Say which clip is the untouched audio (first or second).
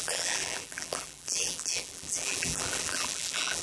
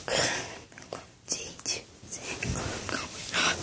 second